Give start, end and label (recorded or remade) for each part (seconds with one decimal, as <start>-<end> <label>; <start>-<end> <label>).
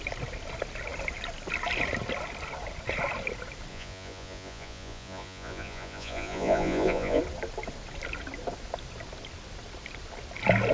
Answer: 0.0-3.7 recorded; 3.7-7.2 remade; 7.2-10.7 recorded